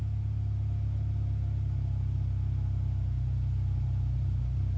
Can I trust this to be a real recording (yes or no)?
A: yes